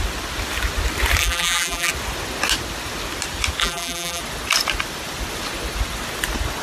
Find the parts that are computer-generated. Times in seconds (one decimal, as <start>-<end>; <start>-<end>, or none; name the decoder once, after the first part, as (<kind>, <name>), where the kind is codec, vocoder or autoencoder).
1.2-1.9 (vocoder, BigVGAN v2); 3.6-4.2